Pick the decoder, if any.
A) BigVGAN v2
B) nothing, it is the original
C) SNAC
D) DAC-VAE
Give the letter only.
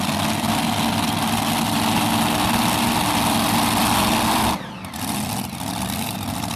B